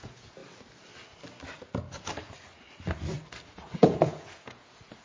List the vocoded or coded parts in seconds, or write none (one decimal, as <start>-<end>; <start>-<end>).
0.0-0.4; 3.4-5.0